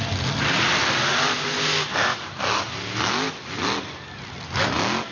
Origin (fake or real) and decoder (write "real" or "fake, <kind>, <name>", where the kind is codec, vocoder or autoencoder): real